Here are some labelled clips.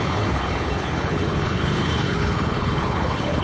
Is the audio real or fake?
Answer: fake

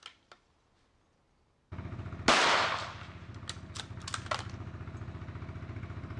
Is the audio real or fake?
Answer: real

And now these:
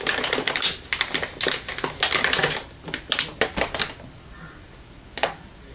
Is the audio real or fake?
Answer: real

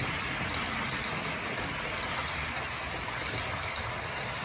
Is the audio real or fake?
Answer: real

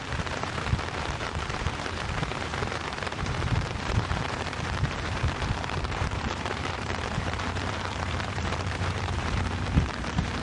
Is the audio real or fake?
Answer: fake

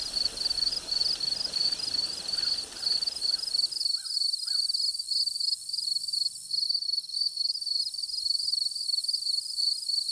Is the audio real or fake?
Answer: real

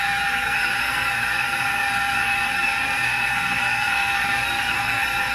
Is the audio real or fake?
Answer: fake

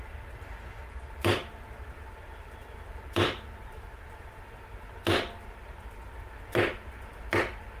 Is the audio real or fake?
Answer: fake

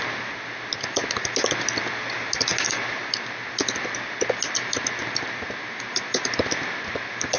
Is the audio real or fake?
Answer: real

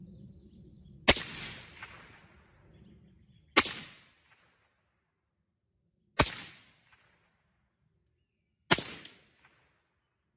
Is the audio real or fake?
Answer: real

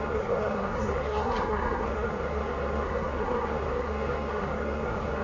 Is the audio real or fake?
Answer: fake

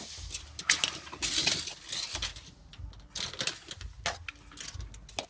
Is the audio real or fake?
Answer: real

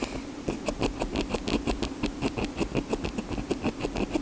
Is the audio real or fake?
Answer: real